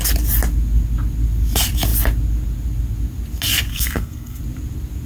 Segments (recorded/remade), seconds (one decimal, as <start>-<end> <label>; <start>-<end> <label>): 0.0-3.7 recorded; 3.7-4.4 remade; 4.4-5.1 recorded